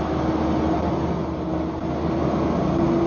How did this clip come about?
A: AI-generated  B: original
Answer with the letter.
B